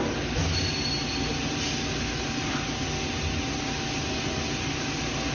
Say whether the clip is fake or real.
real